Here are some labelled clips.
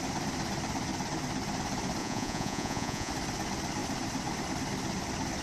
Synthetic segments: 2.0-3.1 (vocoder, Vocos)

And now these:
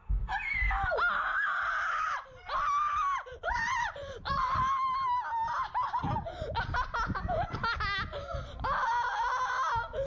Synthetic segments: 3.3-4.6 (vocoder, Vocos)

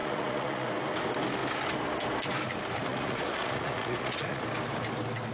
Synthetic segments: 0.0-0.7 (vocoder, Vocos); 2.9-4.4

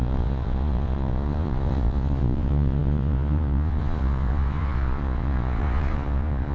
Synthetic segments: 0.0-6.5 (vocoder, Vocos)

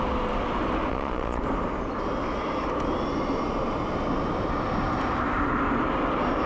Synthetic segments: 0.9-1.4 (vocoder, Vocos)

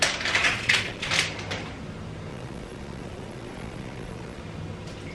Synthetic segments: 0.4-1.1 (vocoder, Vocos); 2.3-4.4

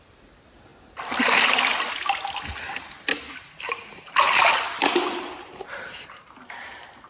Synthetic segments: none